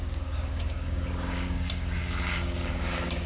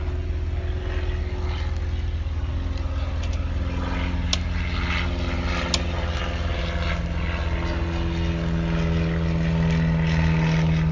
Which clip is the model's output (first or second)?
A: first